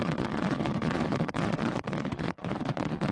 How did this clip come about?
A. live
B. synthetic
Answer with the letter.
B